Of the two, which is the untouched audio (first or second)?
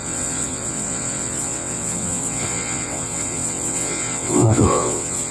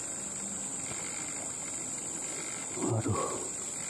second